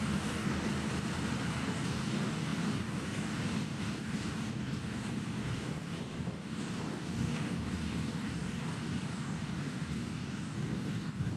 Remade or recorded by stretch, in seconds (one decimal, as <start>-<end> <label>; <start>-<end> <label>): 0.0-0.7 remade; 0.7-1.5 recorded; 1.5-11.4 remade